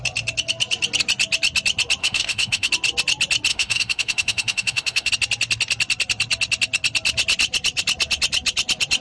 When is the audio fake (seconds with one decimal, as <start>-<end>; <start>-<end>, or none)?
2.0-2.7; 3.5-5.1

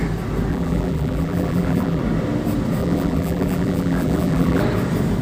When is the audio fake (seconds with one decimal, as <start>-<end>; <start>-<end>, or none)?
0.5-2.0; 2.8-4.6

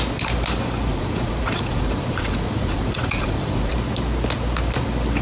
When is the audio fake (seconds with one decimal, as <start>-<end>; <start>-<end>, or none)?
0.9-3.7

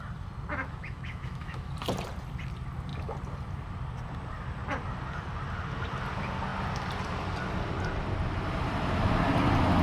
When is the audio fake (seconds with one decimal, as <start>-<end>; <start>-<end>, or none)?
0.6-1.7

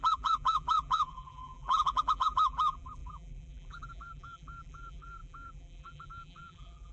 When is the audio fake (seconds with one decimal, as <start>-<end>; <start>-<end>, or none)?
0.0-6.9